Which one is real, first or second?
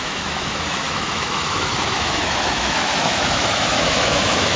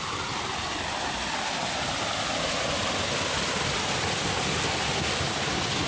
second